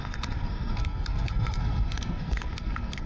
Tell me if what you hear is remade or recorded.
remade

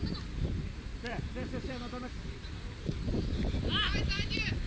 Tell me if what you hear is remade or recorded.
remade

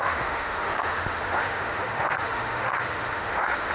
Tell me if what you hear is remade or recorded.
remade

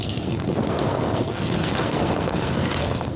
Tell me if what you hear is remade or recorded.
remade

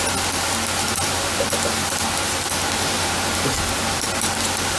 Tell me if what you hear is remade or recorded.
recorded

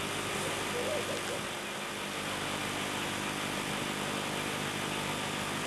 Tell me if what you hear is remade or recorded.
recorded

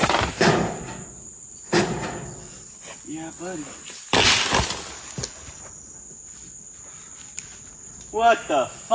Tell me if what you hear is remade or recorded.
recorded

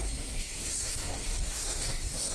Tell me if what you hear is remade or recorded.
remade